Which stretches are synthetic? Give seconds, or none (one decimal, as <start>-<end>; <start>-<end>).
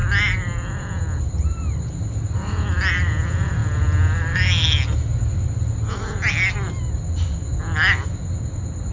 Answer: none